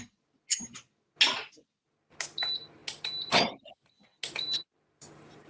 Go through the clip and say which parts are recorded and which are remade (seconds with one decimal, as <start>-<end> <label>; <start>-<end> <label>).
0.0-5.5 recorded